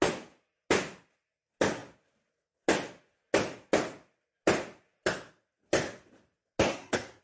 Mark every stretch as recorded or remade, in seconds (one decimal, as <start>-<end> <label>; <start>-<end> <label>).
0.0-6.7 recorded; 6.7-7.2 remade

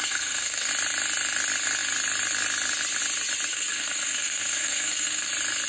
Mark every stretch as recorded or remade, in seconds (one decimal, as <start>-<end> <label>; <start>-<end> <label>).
0.0-0.7 remade; 0.7-3.5 recorded; 3.5-5.3 remade; 5.3-5.7 recorded

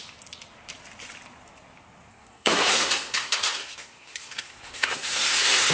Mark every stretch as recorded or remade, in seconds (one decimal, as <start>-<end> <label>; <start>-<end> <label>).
0.0-2.1 recorded; 2.1-5.7 remade

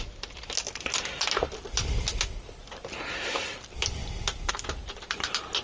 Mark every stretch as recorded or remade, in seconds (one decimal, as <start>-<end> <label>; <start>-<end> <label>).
0.0-5.6 recorded